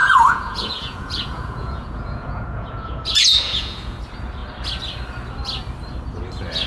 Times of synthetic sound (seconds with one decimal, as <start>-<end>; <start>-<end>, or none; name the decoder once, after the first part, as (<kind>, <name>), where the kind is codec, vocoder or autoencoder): 0.0-4.0 (vocoder, Vocos)